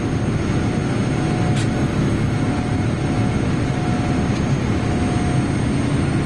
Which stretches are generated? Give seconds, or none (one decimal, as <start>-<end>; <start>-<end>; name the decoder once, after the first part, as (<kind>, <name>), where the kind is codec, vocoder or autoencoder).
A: none